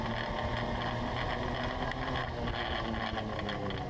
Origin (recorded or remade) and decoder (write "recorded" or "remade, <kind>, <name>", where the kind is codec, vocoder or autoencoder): recorded